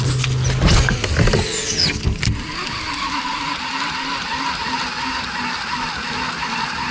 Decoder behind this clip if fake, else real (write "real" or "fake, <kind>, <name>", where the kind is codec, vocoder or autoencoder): real